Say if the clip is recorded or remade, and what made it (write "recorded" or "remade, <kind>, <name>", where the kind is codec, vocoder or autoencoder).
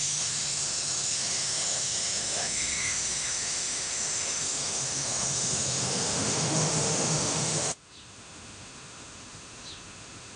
remade, autoencoder, DAC-VAE